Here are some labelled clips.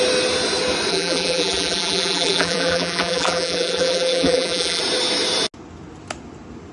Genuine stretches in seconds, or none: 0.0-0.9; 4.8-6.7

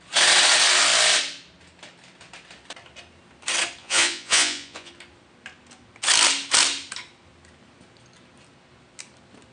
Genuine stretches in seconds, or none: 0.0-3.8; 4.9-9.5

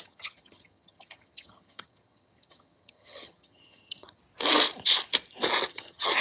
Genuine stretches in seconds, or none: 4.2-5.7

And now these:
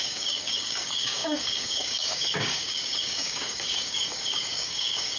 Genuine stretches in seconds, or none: none

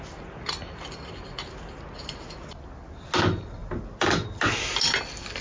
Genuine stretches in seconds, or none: 0.0-5.4

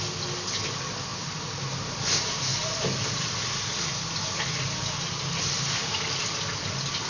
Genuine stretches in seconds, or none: 0.0-7.1